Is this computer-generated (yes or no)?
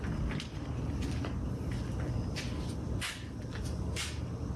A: no